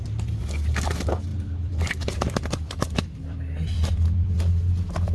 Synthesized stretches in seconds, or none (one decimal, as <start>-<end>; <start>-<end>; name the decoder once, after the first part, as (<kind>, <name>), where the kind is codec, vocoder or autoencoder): 1.3-4.4 (vocoder, BigVGAN v2)